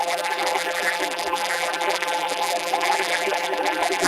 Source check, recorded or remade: remade